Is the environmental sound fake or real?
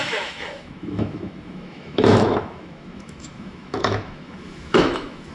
fake